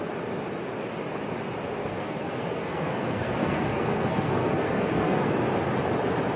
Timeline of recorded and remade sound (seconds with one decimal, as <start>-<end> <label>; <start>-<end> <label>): 0.0-1.8 recorded; 1.8-5.3 remade; 5.3-6.4 recorded